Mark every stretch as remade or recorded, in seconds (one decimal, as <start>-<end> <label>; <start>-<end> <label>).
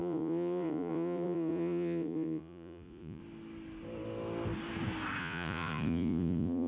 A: 0.0-3.2 remade; 3.2-5.2 recorded; 5.2-6.7 remade